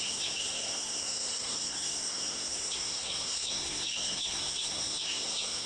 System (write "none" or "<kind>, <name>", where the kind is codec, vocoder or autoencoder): codec, SNAC